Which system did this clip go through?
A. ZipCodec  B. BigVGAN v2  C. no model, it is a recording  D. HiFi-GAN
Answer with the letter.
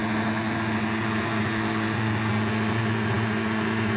C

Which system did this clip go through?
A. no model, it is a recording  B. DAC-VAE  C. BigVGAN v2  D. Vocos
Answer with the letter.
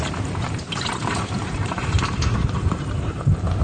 C